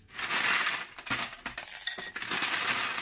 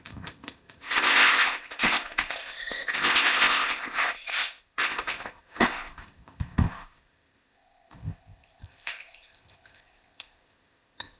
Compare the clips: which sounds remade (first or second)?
second